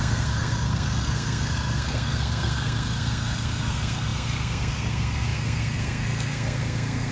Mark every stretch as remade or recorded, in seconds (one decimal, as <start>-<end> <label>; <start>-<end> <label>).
0.0-7.1 remade